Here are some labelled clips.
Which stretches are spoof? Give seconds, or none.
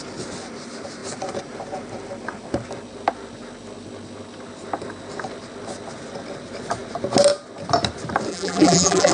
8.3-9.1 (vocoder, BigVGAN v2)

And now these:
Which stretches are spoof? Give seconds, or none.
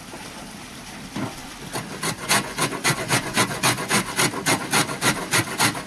2.2-4.1 (vocoder, Vocos)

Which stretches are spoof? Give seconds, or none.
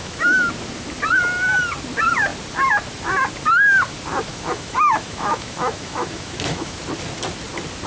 0.0-0.5 (autoencoder, DAC-VAE); 4.3-6.8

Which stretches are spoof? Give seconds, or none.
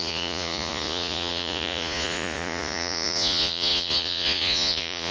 0.0-5.1 (vocoder, Vocos)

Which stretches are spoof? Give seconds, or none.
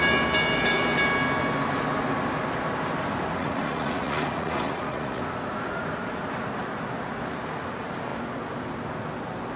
3.4-5.2 (vocoder, Vocos)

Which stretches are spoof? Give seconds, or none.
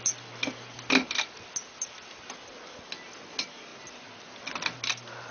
none